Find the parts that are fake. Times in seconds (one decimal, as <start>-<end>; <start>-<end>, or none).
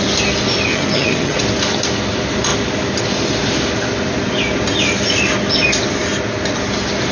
0.7-1.4